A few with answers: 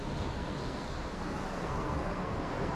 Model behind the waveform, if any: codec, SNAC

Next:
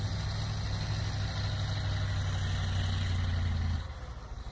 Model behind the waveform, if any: none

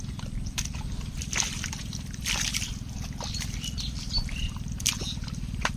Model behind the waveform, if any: none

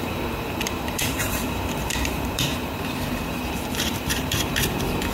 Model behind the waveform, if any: vocoder, BigVGAN v2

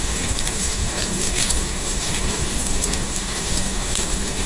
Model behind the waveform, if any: codec, DAC